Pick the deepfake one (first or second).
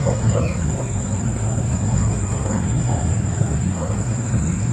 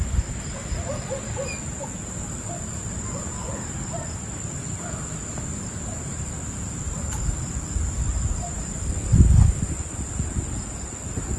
first